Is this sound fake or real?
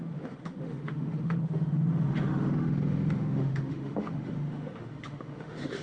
fake